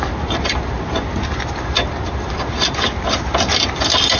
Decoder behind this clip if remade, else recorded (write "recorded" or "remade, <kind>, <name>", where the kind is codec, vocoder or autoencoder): recorded